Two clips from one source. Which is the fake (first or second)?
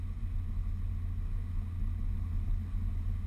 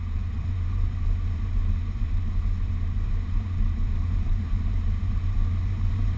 second